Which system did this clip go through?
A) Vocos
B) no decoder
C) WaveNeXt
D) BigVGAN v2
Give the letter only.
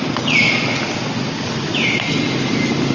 B